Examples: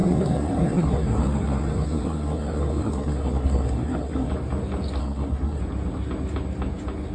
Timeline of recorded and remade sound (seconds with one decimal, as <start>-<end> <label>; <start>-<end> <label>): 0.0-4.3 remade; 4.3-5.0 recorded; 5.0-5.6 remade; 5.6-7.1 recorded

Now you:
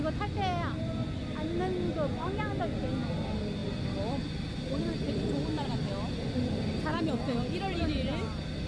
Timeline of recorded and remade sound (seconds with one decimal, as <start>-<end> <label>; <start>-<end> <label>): 0.0-8.7 recorded

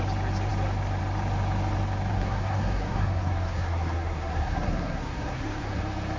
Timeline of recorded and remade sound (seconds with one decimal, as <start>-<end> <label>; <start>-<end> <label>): 0.0-2.1 recorded; 2.1-5.8 remade; 5.8-6.2 recorded

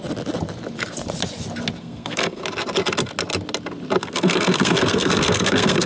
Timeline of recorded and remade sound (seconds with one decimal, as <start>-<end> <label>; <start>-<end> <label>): 0.0-1.8 recorded; 1.8-2.4 remade; 2.4-4.0 recorded; 4.0-5.9 remade